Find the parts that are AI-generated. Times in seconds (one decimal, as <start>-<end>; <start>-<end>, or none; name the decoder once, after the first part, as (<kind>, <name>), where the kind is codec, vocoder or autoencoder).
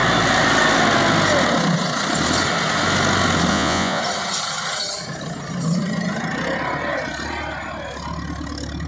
3.5-4.0 (vocoder, Vocos)